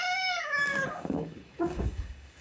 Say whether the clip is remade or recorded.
remade